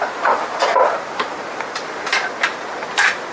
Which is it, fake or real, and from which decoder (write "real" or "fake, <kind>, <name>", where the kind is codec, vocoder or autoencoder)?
real